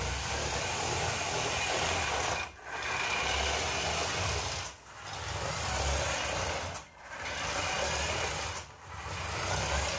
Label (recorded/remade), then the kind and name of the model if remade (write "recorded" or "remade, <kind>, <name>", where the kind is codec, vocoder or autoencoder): recorded